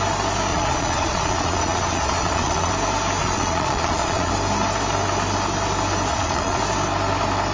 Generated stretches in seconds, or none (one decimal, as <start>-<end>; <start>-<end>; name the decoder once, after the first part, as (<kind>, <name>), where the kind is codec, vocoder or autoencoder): 0.5-2.7 (vocoder, Vocos); 3.2-4.3; 6.1-6.6